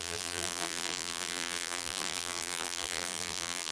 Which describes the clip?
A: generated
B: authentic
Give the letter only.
A